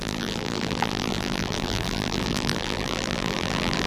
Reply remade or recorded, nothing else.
remade